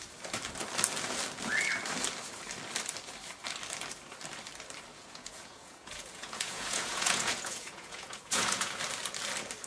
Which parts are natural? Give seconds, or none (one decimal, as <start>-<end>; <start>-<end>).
0.0-4.9; 8.7-9.7

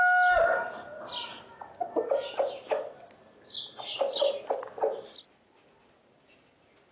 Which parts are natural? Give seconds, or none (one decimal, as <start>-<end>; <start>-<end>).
0.0-6.9

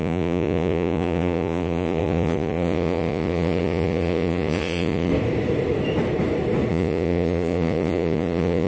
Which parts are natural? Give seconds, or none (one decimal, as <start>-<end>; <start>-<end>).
5.1-6.7

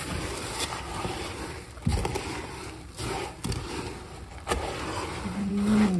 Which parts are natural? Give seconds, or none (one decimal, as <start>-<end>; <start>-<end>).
0.0-6.0

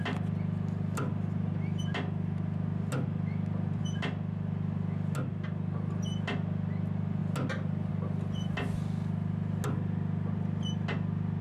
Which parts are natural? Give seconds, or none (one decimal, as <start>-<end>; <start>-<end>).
0.0-11.4

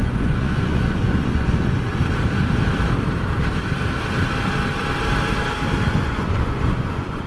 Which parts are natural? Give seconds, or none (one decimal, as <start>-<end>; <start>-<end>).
1.9-5.9

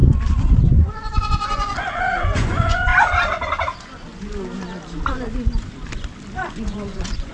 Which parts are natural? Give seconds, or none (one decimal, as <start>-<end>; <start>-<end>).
0.0-0.6; 2.9-6.5

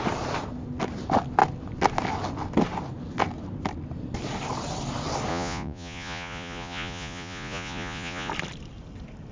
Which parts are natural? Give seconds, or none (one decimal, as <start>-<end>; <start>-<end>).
0.0-5.3; 8.3-9.3